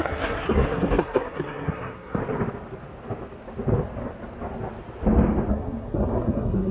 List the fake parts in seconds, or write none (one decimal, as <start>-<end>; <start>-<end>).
0.0-2.2; 5.5-6.7